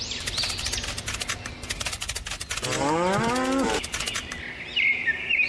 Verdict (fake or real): real